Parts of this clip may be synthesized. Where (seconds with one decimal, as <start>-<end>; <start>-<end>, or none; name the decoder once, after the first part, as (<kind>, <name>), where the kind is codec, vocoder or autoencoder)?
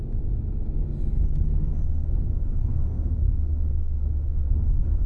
1.6-5.1 (codec, SNAC)